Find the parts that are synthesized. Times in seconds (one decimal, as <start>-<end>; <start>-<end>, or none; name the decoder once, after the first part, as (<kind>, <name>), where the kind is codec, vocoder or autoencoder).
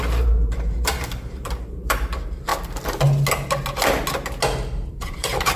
0.0-2.5 (vocoder, BigVGAN v2); 4.9-5.6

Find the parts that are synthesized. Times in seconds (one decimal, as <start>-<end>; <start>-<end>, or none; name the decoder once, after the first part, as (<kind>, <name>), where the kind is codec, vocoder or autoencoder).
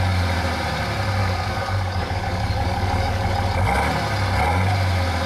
1.2-3.3 (codec, DAC)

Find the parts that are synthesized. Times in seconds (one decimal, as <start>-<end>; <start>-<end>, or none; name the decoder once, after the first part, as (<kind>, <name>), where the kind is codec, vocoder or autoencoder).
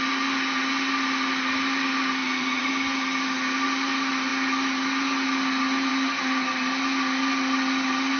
2.2-2.7 (vocoder, Vocos)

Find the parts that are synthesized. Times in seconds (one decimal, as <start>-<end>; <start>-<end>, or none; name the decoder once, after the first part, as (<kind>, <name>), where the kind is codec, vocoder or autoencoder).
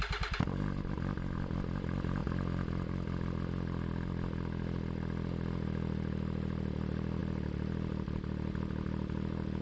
none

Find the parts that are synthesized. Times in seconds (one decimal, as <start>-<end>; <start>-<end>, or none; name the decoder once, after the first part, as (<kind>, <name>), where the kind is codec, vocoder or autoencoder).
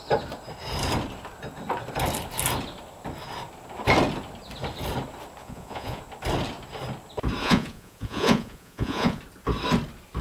5.4-6.0 (vocoder, Vocos); 7.4-9.2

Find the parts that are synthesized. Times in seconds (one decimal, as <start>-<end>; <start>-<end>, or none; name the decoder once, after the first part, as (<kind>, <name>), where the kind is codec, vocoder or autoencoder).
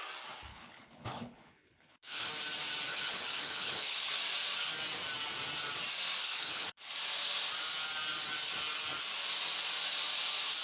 0.5-2.3 (codec, HILCodec); 2.9-4.1; 6.2-6.9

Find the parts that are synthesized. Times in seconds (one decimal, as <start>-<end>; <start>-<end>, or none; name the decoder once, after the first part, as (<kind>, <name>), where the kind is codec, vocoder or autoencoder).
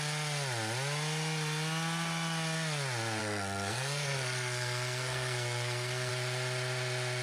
3.2-6.1 (codec, SNAC)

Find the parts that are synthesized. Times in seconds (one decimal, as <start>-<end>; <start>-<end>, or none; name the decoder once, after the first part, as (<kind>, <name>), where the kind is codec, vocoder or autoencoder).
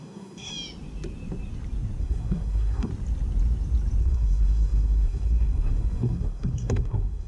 0.0-0.5 (codec, SNAC); 2.0-2.9; 4.0-7.3